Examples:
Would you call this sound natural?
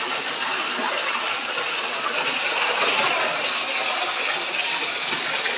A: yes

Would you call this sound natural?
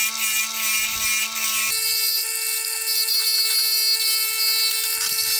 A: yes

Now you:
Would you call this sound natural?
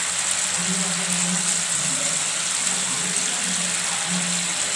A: yes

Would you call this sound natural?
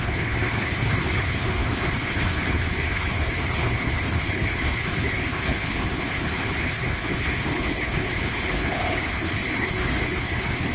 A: no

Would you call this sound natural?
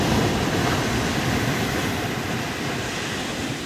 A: no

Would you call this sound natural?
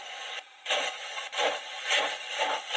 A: yes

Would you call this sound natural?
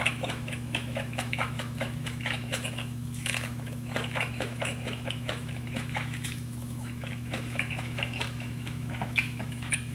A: no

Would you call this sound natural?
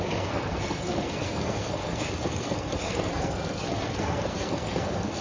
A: no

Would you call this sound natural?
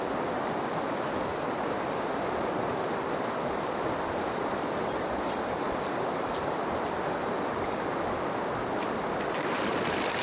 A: no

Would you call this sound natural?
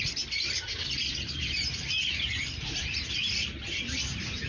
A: yes